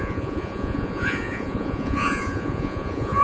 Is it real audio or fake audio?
fake